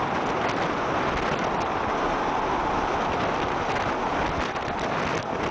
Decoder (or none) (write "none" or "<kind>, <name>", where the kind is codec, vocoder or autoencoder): none